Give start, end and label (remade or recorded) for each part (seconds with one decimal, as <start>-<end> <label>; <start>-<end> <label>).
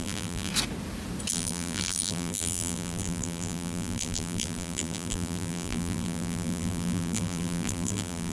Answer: 0.0-0.5 remade; 0.5-1.3 recorded; 1.3-8.3 remade